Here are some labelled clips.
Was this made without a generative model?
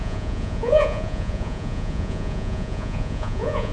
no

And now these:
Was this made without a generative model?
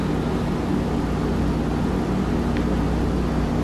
yes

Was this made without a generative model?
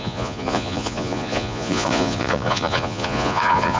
no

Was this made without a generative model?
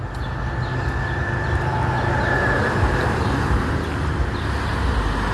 yes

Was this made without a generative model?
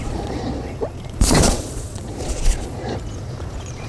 no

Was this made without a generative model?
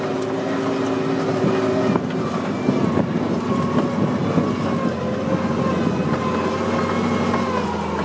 yes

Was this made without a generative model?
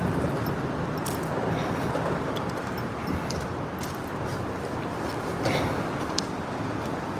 yes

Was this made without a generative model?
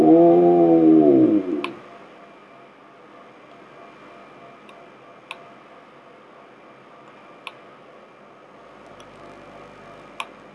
yes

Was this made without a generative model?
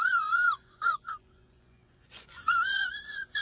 no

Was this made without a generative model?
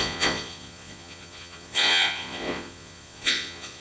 no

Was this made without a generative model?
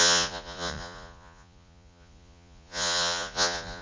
no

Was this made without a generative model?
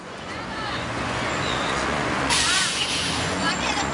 no